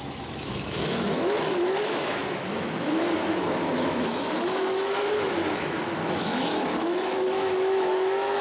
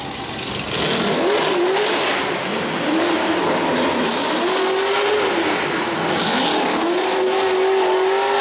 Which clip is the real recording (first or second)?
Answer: second